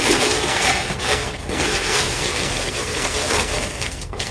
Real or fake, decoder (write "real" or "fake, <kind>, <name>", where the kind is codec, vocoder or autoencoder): fake, codec, SNAC